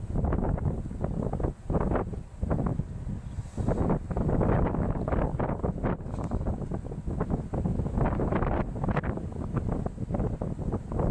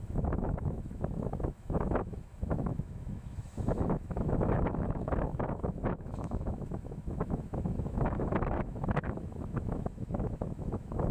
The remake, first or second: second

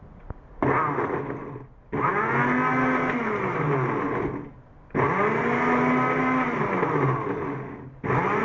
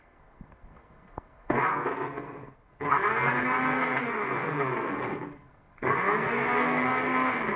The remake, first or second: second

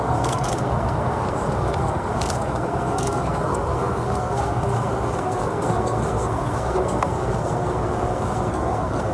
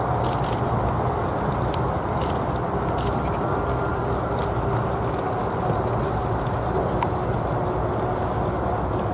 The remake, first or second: first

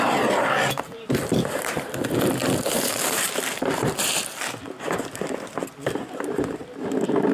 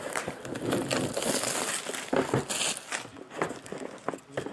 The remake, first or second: first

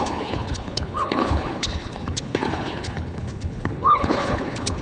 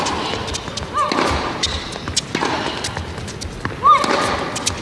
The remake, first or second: first